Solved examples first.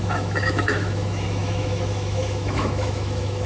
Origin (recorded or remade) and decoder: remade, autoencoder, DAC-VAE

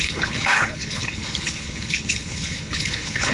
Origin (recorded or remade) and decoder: remade, codec, HILCodec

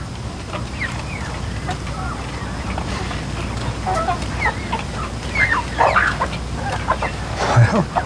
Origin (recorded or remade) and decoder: recorded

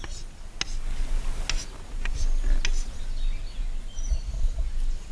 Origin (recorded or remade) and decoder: recorded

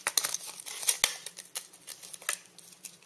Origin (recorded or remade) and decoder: recorded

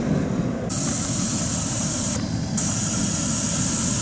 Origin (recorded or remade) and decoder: recorded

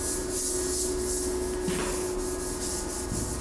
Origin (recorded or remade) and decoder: recorded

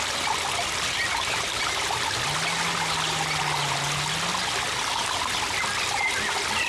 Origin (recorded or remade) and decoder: recorded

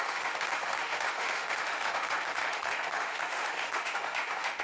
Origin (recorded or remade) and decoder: remade, autoencoder, DAC-VAE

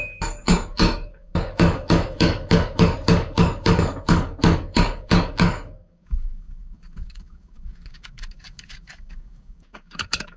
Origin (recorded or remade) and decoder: remade, codec, DAC